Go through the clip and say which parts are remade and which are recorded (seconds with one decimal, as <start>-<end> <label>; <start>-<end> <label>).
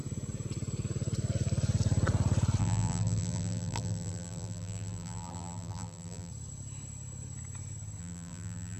0.0-2.6 recorded; 2.6-6.3 remade; 6.3-8.0 recorded; 8.0-8.8 remade